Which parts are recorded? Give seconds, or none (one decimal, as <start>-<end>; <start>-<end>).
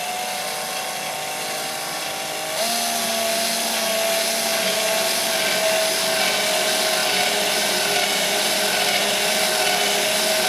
0.0-10.5